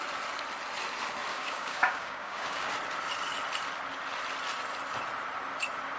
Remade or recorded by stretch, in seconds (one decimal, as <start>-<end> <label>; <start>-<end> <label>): 0.0-1.3 recorded; 1.3-2.7 remade; 2.7-6.0 recorded